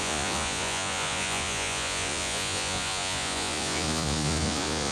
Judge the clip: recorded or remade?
remade